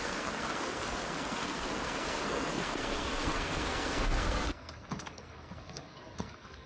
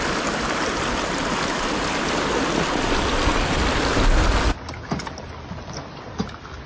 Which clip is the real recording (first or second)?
second